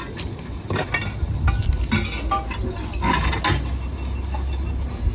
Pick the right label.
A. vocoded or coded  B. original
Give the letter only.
B